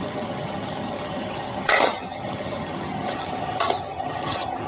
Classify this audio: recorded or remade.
remade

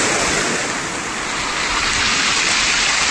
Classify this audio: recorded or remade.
recorded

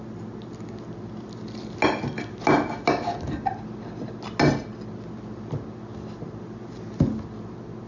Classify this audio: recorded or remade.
recorded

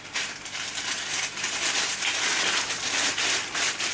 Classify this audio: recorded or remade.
recorded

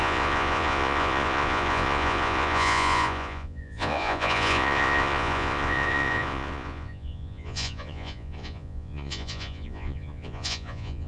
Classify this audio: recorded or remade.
remade